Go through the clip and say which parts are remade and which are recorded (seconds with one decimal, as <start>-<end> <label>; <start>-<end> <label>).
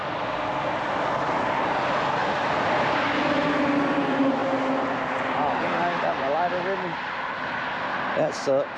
0.0-8.8 recorded